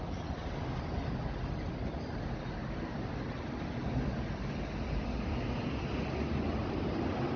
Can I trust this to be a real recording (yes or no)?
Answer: yes